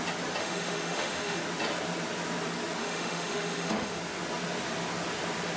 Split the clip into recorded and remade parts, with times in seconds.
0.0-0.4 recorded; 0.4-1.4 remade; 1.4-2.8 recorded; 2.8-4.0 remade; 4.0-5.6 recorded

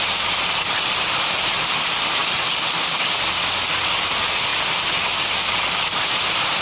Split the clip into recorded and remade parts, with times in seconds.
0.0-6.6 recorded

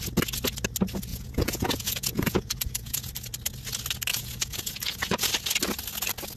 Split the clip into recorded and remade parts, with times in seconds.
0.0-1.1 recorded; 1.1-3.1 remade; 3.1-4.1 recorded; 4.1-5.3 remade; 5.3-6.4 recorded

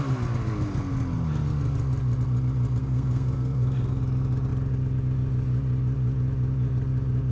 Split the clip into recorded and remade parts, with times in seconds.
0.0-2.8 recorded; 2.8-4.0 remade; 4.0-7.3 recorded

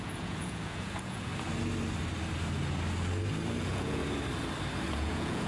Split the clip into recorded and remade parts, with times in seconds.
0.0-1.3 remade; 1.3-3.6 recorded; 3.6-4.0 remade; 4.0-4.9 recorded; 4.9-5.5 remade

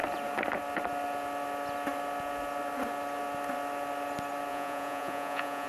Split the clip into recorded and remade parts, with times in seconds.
0.0-4.5 recorded; 4.5-5.7 remade